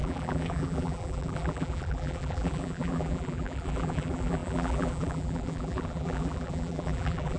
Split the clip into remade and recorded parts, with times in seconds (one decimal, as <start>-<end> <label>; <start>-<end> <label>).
0.0-7.4 remade